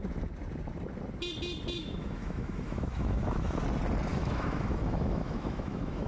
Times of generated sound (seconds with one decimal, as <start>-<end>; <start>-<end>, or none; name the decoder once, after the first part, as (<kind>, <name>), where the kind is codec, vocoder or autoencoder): 1.8-3.6 (autoencoder, DAC-VAE); 4.1-6.1